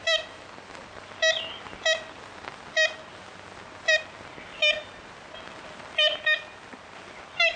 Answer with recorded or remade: recorded